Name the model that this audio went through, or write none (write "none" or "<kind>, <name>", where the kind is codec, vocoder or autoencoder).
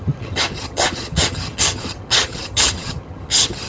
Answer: vocoder, HiFi-GAN